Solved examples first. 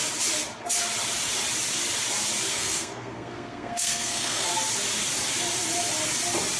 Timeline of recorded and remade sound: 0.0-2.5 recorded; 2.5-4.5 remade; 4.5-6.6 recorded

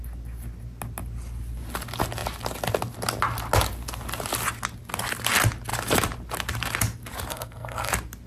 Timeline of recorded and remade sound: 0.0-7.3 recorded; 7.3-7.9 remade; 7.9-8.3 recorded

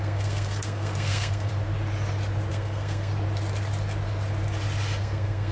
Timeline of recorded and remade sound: 0.0-1.5 remade; 1.5-2.5 recorded; 2.5-3.1 remade; 3.1-5.0 recorded; 5.0-5.5 remade